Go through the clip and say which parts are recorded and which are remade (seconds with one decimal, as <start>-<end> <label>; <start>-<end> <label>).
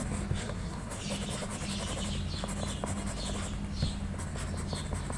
0.0-0.4 recorded; 0.4-1.0 remade; 1.0-5.2 recorded